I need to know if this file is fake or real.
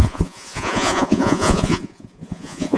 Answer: fake